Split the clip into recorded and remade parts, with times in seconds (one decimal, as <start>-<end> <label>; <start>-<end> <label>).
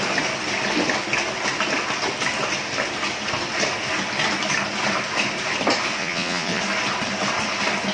0.0-6.0 recorded; 6.0-6.6 remade; 6.6-7.9 recorded